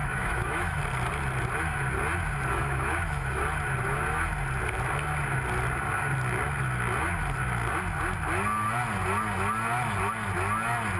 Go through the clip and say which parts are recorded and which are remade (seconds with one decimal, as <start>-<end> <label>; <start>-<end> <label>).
0.0-0.8 remade; 0.8-2.5 recorded; 2.5-3.4 remade; 3.4-11.0 recorded